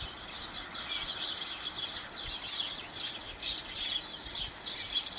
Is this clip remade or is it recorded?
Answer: remade